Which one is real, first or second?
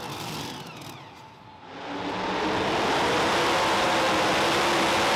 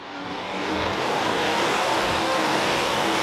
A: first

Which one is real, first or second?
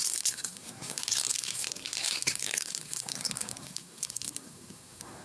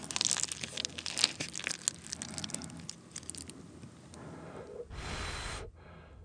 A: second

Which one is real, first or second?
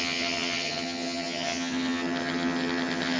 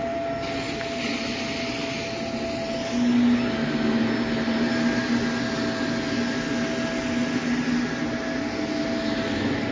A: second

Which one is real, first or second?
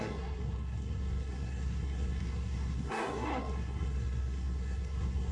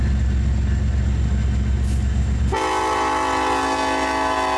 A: second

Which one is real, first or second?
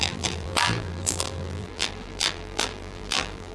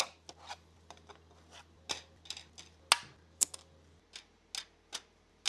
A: second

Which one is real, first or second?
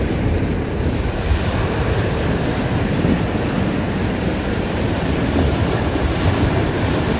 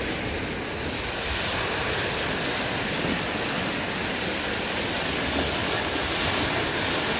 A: second